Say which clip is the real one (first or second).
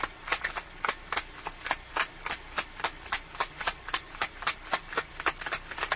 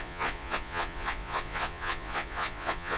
first